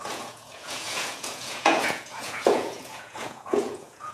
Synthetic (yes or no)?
yes